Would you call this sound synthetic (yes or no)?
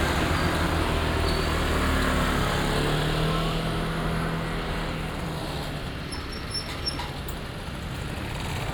no